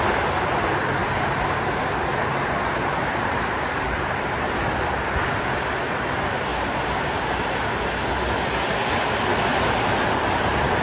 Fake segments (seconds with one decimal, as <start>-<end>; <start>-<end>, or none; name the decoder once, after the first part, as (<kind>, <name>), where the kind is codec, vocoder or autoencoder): 1.0-4.5 (vocoder, BigVGAN v2); 6.5-8.1; 9.5-10.0